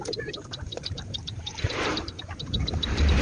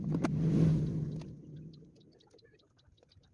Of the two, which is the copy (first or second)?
first